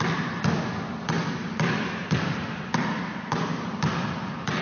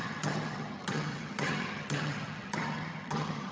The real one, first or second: first